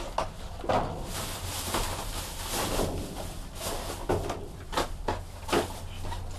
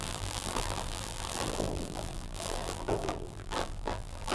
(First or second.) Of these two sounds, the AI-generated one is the second